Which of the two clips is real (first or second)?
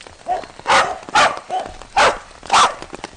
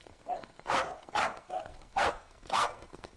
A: first